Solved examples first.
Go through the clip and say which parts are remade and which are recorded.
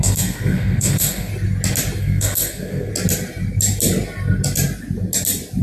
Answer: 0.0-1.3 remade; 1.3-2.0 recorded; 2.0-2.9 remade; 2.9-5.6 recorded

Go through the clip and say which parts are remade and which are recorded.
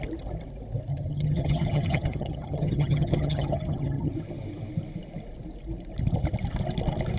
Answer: 0.0-0.9 recorded; 0.9-4.1 remade; 4.1-7.2 recorded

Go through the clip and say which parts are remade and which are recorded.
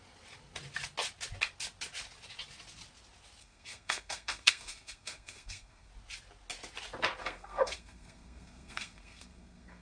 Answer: 0.0-3.4 recorded; 3.4-5.9 remade; 5.9-7.2 recorded; 7.2-9.8 remade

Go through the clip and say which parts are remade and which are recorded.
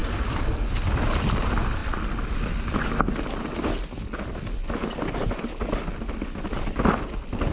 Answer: 0.0-7.5 recorded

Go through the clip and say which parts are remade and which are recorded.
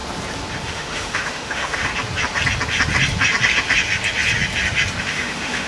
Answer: 0.0-0.5 recorded; 0.5-1.9 remade; 1.9-5.0 recorded; 5.0-5.7 remade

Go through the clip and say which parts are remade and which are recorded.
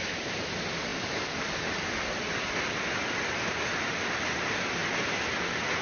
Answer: 0.0-5.8 recorded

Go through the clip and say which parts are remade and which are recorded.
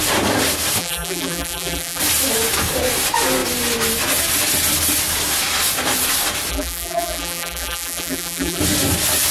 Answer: 0.0-0.8 recorded; 0.8-2.0 remade; 2.0-6.5 recorded; 6.5-8.6 remade; 8.6-9.3 recorded